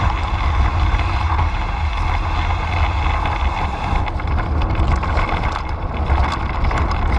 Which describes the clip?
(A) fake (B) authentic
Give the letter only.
B